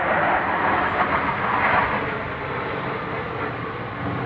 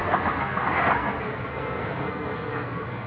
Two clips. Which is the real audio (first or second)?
first